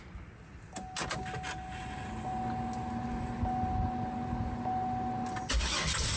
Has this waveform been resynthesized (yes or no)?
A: no